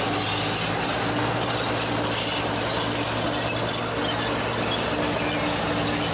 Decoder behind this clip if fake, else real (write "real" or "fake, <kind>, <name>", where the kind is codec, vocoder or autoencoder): real